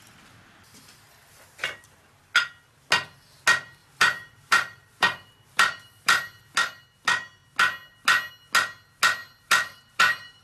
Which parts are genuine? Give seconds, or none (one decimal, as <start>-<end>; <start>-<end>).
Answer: 0.0-3.8; 6.5-9.2